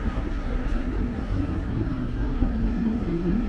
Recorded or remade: remade